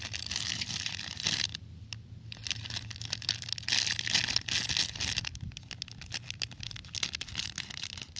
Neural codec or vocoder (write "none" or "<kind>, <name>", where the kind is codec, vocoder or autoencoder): none